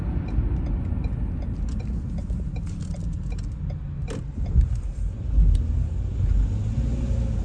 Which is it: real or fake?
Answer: real